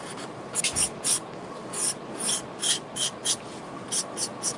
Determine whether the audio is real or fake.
real